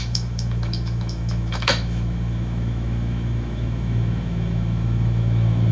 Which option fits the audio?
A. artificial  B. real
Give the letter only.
A